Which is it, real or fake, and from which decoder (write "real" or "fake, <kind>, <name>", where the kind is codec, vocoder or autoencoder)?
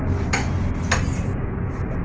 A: real